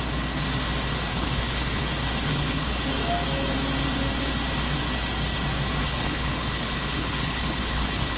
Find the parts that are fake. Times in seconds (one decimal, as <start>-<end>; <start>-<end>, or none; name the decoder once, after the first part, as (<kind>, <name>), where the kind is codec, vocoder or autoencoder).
1.1-1.8 (codec, HILCodec); 2.3-2.8; 5.8-8.2